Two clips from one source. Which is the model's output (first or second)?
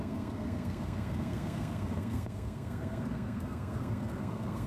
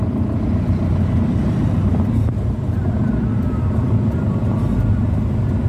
first